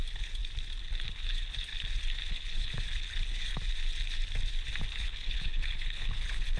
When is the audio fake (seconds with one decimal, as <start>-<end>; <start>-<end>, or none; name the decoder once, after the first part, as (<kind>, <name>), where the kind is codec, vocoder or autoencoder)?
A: 0.0-0.4 (codec, HILCodec); 1.1-1.7; 2.3-3.5; 4.9-6.6